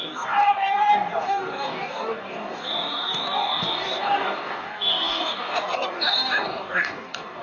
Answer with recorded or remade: remade